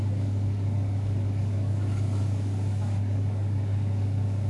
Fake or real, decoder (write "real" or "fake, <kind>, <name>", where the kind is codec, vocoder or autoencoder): fake, codec, DAC